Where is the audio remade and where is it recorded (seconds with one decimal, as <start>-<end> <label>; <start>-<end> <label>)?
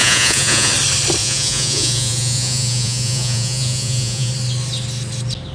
0.0-0.7 remade; 0.7-1.2 recorded; 1.2-4.3 remade; 4.3-5.5 recorded